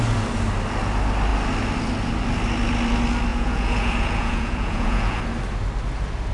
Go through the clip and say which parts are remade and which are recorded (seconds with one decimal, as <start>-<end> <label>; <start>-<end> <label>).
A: 0.0-3.3 recorded; 3.3-5.2 remade; 5.2-6.3 recorded